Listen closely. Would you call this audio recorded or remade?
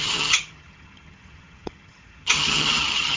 remade